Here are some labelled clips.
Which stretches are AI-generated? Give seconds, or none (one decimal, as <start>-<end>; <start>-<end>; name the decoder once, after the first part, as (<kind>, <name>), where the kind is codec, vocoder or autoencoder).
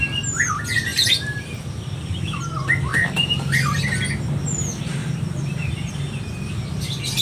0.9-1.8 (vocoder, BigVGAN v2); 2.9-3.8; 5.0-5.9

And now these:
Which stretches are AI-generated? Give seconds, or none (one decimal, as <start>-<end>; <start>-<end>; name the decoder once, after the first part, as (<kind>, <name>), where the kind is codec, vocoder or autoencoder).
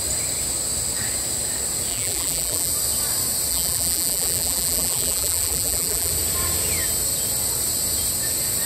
1.9-2.7 (vocoder, BigVGAN v2); 3.5-6.1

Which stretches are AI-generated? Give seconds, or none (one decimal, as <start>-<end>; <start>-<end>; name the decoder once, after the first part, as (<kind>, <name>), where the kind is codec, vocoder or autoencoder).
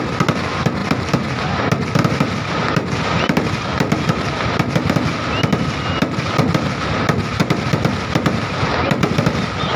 none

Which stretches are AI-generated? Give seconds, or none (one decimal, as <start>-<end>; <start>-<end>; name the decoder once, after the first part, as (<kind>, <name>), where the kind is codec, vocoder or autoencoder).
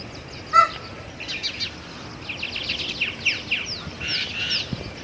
none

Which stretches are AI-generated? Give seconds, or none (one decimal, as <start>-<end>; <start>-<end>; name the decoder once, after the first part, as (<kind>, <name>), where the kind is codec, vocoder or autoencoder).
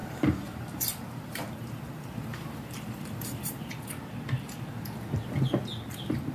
0.0-3.7 (vocoder, BigVGAN v2)